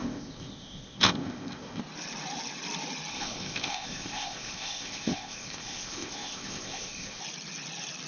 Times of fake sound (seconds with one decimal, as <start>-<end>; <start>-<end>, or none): 0.0-1.8; 3.1-7.2